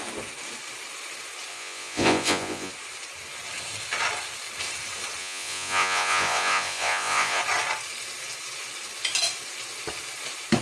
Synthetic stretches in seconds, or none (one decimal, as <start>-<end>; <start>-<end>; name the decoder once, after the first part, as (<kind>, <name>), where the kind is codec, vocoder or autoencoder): 1.5-2.7 (vocoder, Vocos); 5.2-7.4